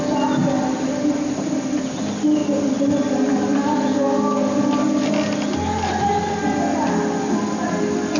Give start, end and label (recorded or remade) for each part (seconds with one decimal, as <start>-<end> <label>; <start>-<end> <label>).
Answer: 0.0-8.2 recorded